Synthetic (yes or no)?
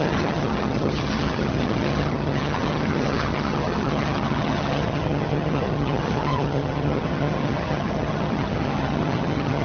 yes